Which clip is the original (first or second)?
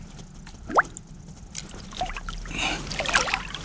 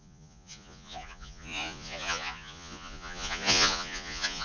first